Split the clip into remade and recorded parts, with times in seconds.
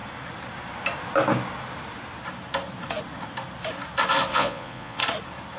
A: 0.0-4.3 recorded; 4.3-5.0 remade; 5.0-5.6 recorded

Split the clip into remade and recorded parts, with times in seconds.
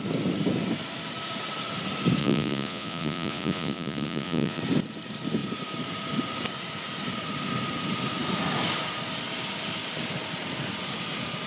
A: 0.0-2.2 recorded; 2.2-4.6 remade; 4.6-11.5 recorded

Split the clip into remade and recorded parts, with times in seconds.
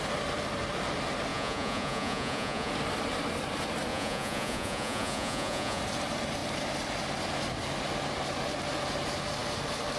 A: 0.0-1.3 recorded; 1.3-2.7 remade; 2.7-3.9 recorded; 3.9-5.8 remade; 5.8-10.0 recorded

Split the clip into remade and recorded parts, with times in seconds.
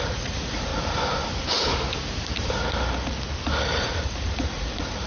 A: 0.0-0.7 remade; 0.7-3.8 recorded; 3.8-5.1 remade